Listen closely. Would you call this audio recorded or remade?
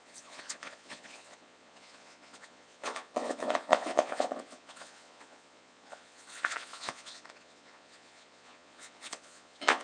remade